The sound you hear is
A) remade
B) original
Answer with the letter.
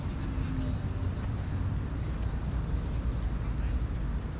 B